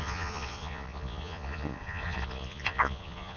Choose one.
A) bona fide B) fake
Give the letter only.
B